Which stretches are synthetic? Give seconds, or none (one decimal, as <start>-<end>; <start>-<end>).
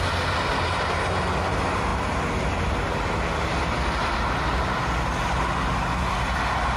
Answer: none